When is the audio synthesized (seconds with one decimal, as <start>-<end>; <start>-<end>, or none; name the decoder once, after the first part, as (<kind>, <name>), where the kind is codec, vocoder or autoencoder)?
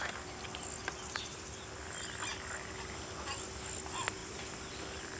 none